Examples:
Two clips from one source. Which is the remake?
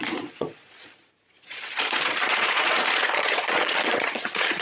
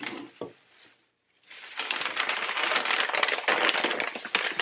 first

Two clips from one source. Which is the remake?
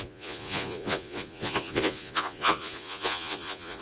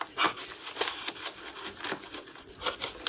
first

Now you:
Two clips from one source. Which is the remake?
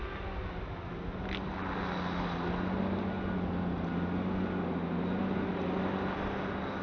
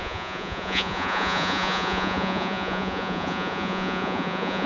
second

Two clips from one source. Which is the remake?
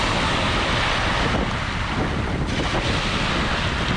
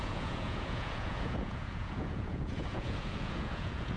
second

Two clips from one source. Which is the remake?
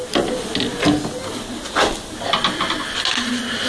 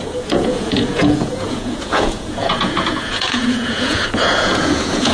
second